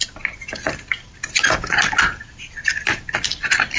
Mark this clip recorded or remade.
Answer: remade